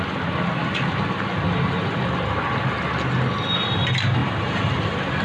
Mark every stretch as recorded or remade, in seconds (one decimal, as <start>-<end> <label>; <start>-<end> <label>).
0.0-5.2 recorded